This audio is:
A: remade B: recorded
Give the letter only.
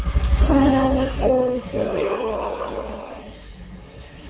A